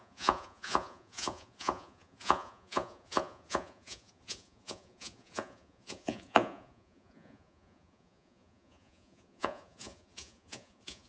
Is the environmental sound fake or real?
fake